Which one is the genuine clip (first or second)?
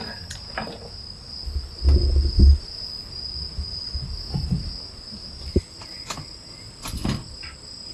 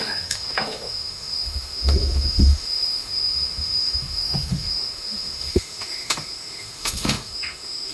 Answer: first